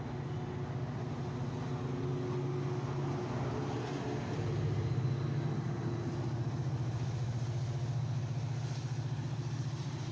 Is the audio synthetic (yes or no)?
no